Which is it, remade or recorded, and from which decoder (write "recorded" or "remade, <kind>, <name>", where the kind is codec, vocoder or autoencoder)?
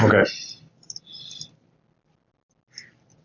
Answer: recorded